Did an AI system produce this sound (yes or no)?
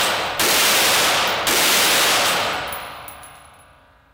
no